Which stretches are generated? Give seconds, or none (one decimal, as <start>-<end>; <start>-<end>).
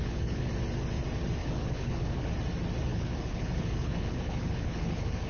0.0-0.5; 1.4-2.3; 2.9-5.3